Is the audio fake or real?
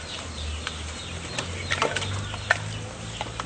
real